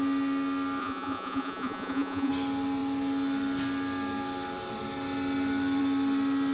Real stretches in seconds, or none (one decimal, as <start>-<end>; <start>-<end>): 0.0-0.8; 2.3-6.5